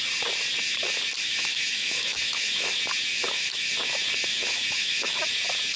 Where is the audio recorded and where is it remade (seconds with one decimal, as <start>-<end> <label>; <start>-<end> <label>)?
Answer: 0.0-1.2 recorded; 1.2-2.7 remade; 2.7-3.1 recorded; 3.1-3.7 remade; 3.7-4.3 recorded; 4.3-5.2 remade; 5.2-5.8 recorded